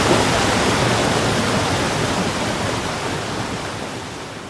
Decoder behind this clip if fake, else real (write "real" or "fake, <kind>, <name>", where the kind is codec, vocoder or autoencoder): real